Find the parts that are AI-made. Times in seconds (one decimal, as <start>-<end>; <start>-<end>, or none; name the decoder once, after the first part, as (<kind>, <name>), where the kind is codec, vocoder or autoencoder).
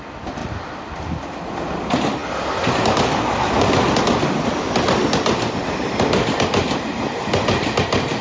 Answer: none